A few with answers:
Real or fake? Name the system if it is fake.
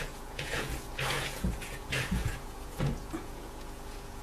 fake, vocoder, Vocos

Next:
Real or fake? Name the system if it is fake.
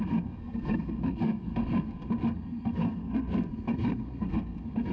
fake, codec, SNAC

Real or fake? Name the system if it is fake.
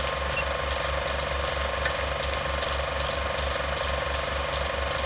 real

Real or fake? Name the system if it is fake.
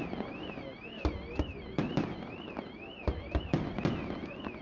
real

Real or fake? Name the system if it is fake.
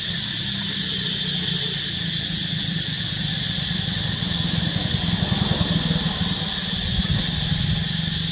real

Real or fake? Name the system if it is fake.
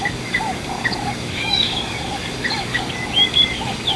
fake, codec, DAC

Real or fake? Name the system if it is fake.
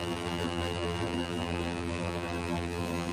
fake, vocoder, BigVGAN v2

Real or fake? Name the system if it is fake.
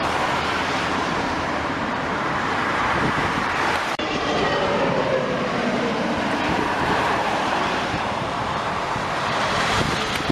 fake, vocoder, BigVGAN v2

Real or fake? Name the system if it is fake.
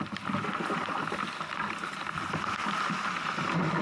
real